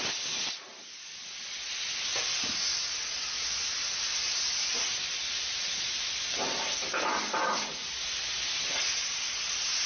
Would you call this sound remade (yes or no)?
no